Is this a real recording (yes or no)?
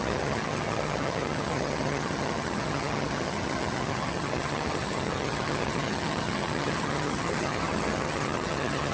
no